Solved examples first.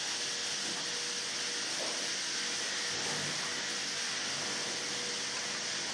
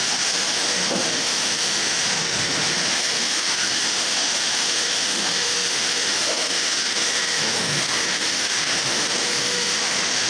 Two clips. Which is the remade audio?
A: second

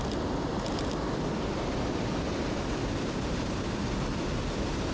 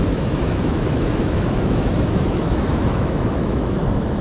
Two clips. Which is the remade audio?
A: second